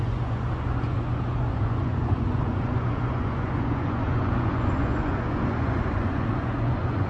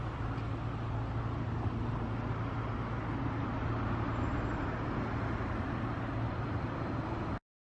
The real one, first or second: second